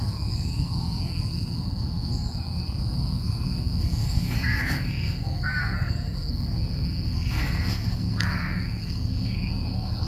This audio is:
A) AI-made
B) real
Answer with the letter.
A